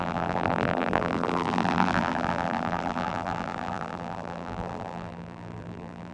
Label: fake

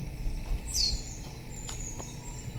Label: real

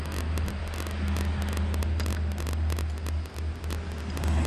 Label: real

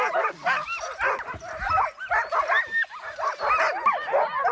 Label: real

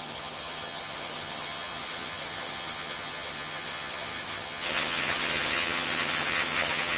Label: fake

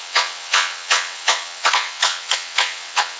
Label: fake